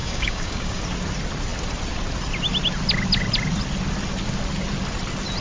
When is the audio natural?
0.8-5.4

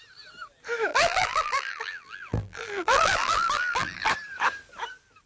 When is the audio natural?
0.0-0.9; 4.1-5.3

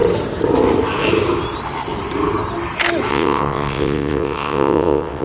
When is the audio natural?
0.0-3.1

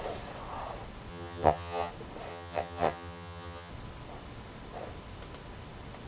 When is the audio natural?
0.0-1.1; 1.9-2.3; 3.7-6.1

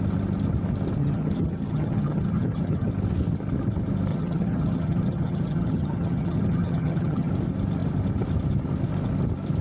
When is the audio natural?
0.0-1.0; 2.9-4.1; 7.3-9.6